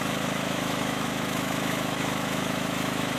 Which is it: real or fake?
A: fake